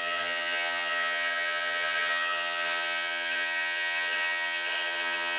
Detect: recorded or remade remade